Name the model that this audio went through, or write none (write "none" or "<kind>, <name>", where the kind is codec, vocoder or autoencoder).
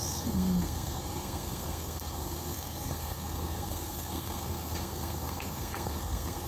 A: codec, SNAC